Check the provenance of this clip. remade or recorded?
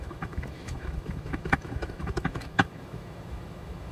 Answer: remade